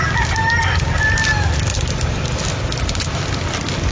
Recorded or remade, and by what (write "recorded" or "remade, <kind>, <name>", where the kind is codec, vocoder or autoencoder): recorded